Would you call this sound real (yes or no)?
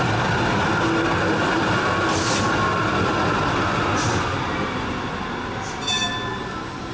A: yes